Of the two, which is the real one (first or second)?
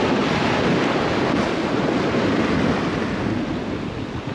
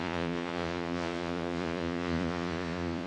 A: first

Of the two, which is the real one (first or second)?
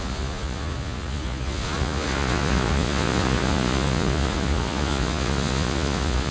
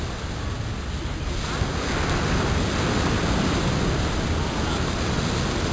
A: second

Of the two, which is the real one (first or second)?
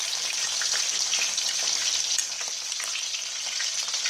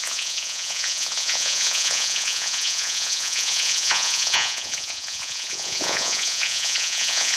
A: first